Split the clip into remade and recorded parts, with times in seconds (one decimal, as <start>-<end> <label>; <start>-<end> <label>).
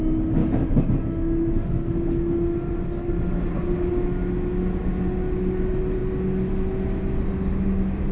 0.0-8.1 recorded